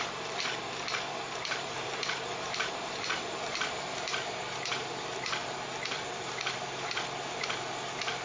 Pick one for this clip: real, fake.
fake